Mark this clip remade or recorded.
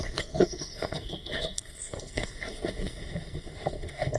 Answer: remade